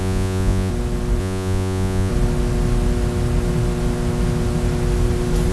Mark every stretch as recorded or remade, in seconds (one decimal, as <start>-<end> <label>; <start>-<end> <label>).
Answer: 0.0-0.7 remade; 0.7-1.2 recorded; 1.2-2.1 remade; 2.1-5.5 recorded